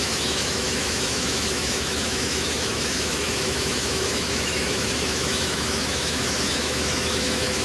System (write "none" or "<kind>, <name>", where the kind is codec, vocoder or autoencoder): autoencoder, DAC-VAE